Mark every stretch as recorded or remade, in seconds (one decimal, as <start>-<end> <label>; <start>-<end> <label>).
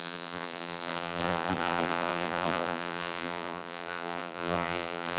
0.0-5.2 remade